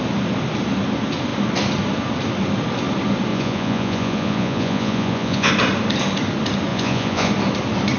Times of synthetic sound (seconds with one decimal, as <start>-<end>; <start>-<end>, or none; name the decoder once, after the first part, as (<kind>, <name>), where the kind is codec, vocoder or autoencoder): 3.3-5.5 (vocoder, Vocos); 6.7-7.3